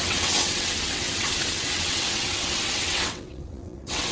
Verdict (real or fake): fake